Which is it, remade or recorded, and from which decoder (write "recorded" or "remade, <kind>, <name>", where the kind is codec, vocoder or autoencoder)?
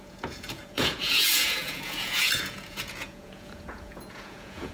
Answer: remade, vocoder, Vocos